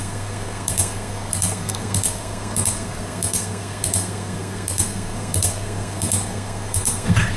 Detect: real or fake fake